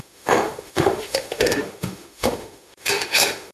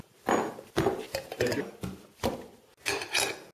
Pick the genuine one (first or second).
second